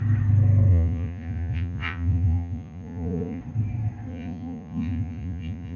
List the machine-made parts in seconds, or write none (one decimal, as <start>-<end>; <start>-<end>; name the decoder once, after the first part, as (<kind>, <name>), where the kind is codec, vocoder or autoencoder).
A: 0.7-3.4 (vocoder, Vocos); 4.1-5.8

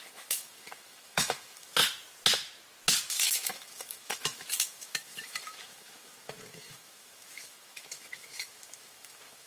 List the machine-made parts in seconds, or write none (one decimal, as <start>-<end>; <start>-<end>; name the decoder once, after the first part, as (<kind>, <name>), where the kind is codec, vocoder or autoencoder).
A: 0.0-1.8 (autoencoder, DAC-VAE); 3.1-9.5

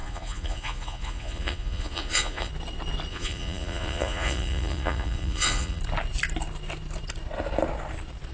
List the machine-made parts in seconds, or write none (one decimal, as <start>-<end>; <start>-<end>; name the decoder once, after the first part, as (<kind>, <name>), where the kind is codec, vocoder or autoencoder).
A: 0.0-2.5 (vocoder, Vocos); 3.1-5.8